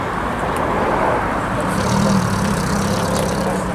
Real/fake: fake